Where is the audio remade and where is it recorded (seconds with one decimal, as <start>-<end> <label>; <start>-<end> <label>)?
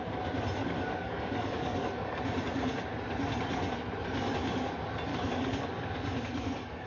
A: 0.0-0.6 recorded; 0.6-2.2 remade; 2.2-5.1 recorded; 5.1-6.9 remade